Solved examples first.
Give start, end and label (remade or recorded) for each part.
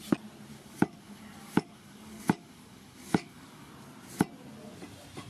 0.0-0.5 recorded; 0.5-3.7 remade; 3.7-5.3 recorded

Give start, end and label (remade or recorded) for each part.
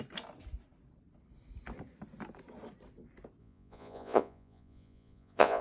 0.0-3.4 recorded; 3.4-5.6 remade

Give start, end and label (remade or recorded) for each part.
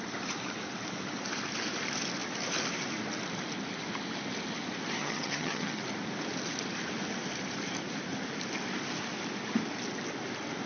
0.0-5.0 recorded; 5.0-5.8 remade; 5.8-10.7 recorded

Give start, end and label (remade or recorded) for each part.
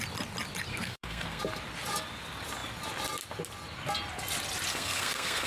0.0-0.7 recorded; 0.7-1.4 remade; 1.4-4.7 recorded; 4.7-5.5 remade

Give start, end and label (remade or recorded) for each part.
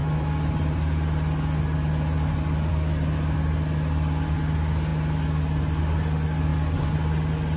0.0-7.6 recorded